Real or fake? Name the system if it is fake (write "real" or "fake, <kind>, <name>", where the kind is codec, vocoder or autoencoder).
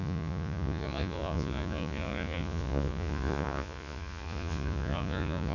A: fake, vocoder, Vocos